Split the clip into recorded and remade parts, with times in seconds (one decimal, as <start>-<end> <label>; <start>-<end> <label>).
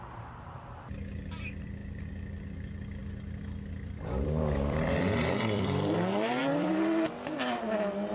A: 0.0-3.0 recorded; 3.0-6.7 remade; 6.7-8.1 recorded